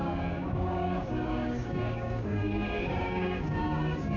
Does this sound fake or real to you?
fake